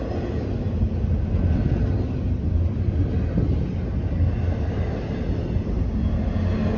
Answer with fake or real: real